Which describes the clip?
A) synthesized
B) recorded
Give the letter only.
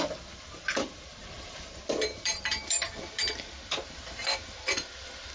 A